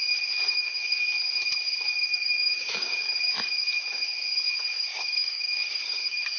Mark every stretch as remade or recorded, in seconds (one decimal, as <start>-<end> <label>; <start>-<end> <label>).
0.0-0.4 recorded; 0.4-1.0 remade; 1.0-1.8 recorded; 1.8-3.1 remade; 3.1-4.9 recorded; 4.9-6.4 remade